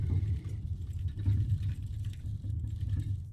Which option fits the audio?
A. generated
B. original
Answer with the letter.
A